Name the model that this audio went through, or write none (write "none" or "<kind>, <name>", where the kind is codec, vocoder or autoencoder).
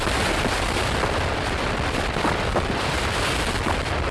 vocoder, BigVGAN v2